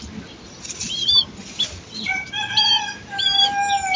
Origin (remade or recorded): recorded